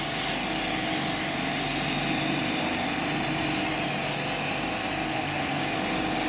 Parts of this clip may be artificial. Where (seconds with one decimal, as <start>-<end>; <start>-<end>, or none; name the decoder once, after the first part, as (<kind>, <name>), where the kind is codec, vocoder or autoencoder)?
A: 5.1-5.6 (codec, SNAC)